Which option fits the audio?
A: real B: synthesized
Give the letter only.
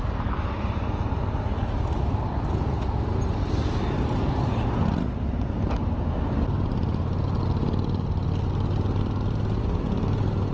A